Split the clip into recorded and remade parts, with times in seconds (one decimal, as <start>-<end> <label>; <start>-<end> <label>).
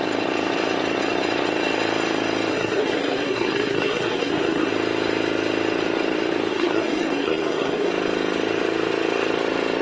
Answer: 0.0-2.5 recorded; 2.5-4.7 remade; 4.7-6.5 recorded; 6.5-7.9 remade; 7.9-9.8 recorded